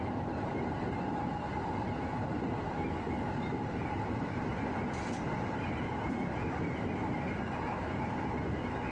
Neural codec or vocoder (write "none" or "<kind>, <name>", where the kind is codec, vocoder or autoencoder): none